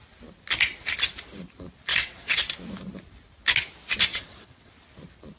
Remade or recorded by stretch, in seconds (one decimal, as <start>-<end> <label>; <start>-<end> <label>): 0.0-1.9 recorded; 1.9-2.4 remade; 2.4-4.1 recorded; 4.1-4.7 remade; 4.7-5.4 recorded